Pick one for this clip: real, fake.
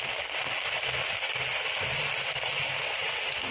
fake